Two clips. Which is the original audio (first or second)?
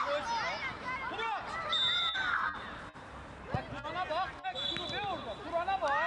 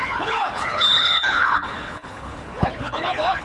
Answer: first